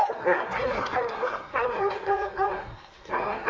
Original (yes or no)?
no